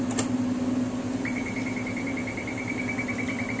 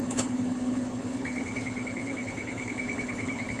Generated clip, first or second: second